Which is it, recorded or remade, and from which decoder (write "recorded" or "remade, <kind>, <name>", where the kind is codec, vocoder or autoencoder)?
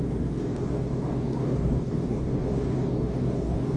remade, codec, DAC